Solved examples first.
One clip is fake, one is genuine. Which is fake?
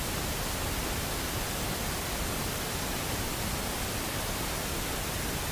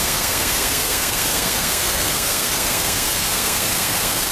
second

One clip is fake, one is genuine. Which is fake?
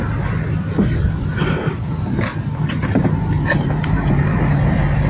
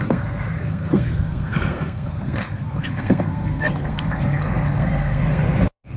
second